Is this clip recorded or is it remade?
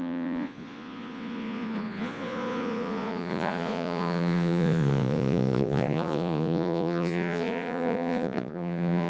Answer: remade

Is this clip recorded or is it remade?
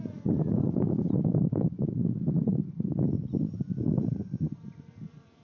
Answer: remade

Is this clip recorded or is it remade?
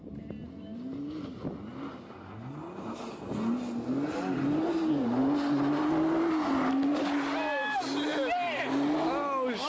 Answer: recorded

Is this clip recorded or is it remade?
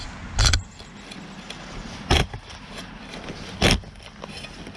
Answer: recorded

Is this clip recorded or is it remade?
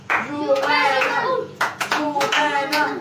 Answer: remade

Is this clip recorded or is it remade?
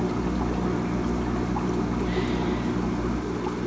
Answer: recorded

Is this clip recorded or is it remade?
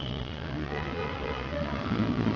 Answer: remade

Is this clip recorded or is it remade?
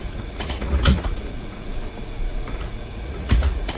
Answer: remade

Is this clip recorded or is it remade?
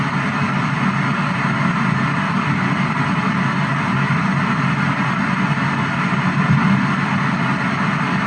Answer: recorded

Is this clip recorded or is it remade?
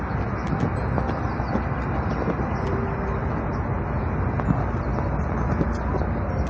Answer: recorded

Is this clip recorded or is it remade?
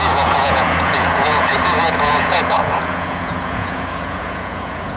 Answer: remade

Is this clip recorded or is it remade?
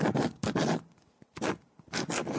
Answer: recorded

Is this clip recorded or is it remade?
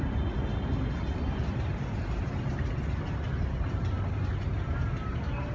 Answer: recorded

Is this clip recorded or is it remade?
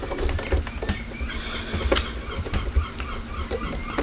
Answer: recorded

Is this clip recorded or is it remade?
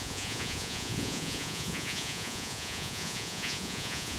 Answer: remade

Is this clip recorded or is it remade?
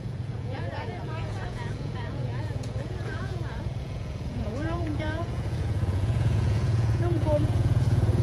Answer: remade